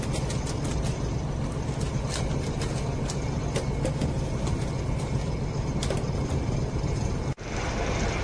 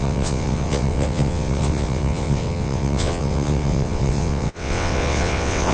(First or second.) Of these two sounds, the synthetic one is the second